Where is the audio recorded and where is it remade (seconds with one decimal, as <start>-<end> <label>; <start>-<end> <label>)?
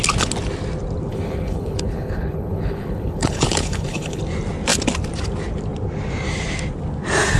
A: 0.0-1.1 recorded; 1.1-4.2 remade; 4.2-7.4 recorded